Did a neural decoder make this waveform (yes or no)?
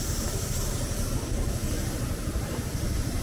yes